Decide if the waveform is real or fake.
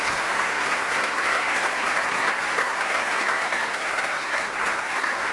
fake